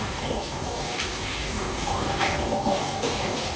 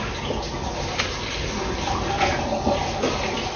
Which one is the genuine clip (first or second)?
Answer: second